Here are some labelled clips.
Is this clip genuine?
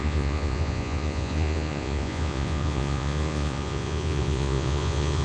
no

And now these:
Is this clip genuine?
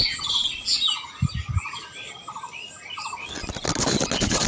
yes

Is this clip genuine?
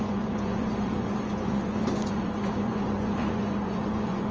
no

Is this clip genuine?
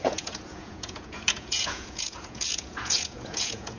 no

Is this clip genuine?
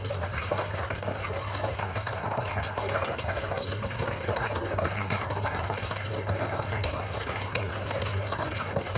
no